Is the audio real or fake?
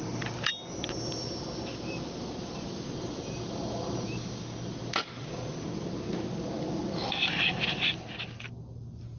real